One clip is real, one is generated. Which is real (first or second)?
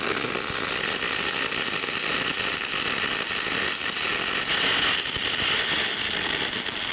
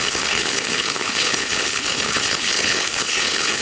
first